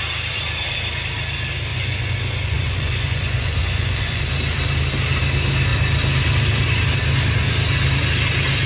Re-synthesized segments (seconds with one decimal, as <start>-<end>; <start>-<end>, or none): 1.7-4.2